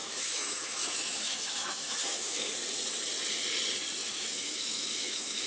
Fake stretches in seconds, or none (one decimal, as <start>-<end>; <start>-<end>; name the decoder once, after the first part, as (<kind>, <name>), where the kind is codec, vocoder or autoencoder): 0.0-2.5 (autoencoder, DAC-VAE); 4.0-5.5